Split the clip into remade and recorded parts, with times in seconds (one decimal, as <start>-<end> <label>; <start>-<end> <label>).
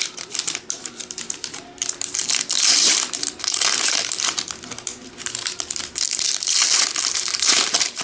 0.0-8.0 remade